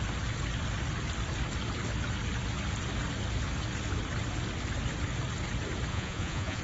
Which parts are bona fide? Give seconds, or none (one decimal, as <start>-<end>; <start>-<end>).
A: 0.0-5.9